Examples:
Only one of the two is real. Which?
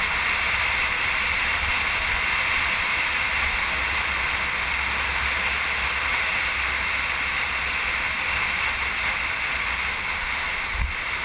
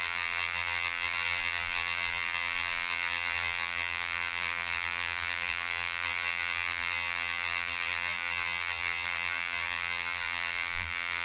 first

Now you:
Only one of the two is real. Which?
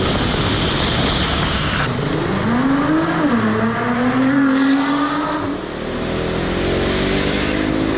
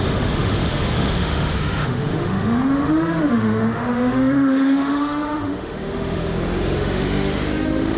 first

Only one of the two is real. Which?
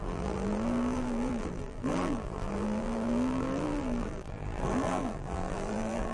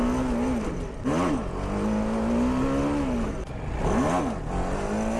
second